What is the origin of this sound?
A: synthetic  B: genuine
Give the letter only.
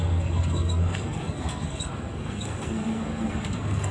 A